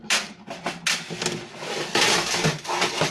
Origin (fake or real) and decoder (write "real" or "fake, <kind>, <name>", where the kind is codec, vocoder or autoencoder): real